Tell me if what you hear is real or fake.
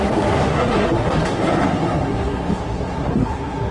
fake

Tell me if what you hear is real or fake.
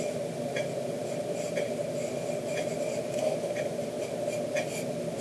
real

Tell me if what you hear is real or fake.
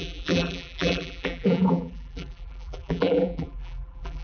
fake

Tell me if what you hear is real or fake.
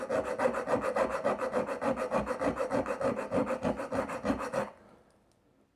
real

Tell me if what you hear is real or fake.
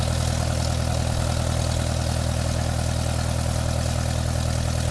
real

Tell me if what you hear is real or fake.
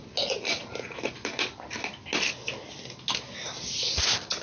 real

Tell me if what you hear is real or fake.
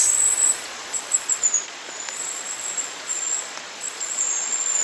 fake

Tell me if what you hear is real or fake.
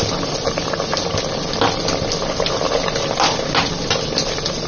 real